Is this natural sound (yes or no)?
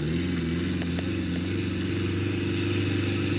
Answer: yes